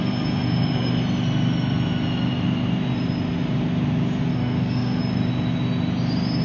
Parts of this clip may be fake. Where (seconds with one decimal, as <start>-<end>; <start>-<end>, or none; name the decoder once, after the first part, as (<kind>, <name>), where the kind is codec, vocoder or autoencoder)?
4.3-5.0 (autoencoder, DAC-VAE)